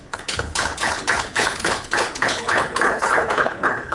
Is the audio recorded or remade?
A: remade